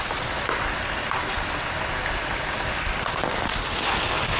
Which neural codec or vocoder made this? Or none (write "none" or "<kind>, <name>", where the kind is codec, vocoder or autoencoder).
none